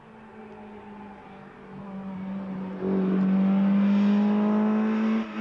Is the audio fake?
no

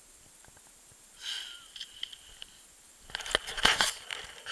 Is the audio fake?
no